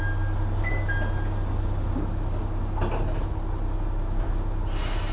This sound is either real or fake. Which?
real